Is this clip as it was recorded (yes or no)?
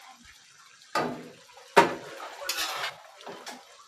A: yes